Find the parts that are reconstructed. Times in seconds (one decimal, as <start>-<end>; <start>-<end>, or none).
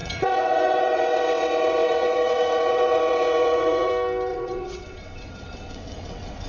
0.0-3.9; 4.3-6.5